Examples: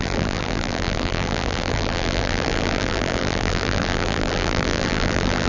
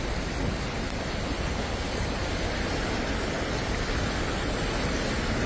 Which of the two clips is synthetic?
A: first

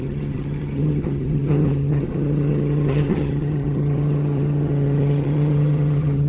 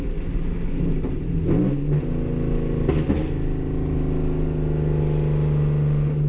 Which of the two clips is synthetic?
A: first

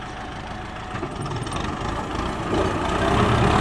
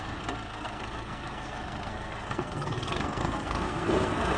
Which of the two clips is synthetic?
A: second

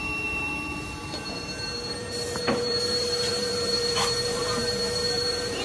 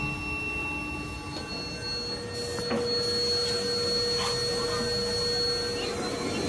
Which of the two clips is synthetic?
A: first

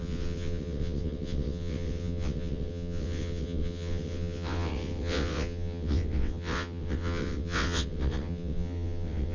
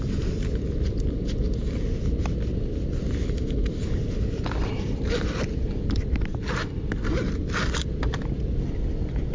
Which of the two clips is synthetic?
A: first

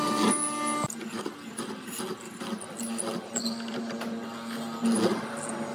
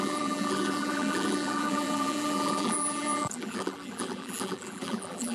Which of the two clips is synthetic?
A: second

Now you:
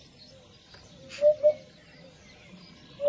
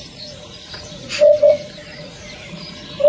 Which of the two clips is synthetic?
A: second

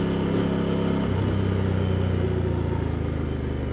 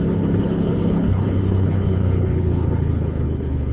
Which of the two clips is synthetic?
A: second